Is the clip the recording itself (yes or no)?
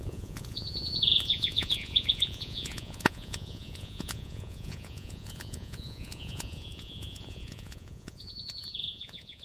no